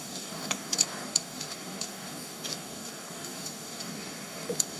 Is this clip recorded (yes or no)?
no